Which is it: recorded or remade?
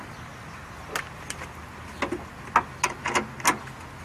recorded